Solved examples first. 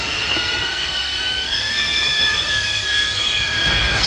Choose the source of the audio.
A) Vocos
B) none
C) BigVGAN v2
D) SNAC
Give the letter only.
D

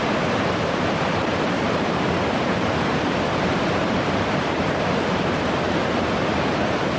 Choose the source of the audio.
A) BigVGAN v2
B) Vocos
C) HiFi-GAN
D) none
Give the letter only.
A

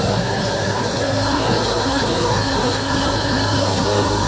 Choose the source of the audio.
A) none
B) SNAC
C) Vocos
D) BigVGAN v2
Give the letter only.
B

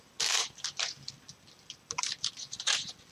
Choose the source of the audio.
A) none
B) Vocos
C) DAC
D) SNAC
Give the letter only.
A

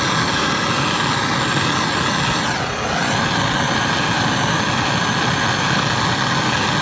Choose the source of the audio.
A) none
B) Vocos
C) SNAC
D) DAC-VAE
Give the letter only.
A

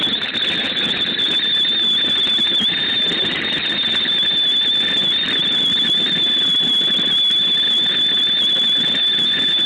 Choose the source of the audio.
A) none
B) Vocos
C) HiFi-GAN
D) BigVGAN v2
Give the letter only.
A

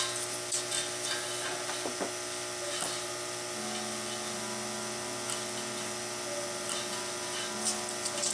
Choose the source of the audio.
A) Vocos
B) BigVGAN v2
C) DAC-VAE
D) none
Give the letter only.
D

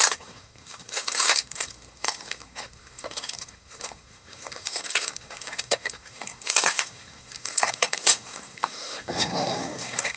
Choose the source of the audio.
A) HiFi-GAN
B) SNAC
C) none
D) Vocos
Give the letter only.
B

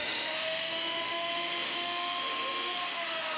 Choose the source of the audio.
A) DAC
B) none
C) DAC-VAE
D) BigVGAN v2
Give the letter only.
C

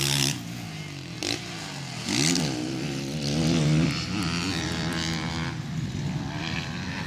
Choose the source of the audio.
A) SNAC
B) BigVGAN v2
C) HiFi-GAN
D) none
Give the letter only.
D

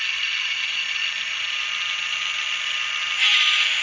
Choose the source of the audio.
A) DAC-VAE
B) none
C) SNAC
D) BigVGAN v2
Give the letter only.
B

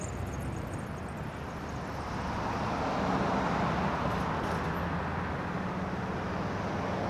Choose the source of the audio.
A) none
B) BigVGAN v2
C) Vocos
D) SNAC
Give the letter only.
A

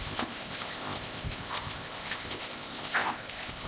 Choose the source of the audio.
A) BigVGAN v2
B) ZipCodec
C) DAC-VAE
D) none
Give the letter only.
B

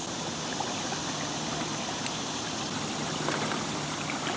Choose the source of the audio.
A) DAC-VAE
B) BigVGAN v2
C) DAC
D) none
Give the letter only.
D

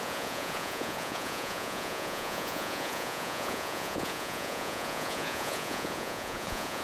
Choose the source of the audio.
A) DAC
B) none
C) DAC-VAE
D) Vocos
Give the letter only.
D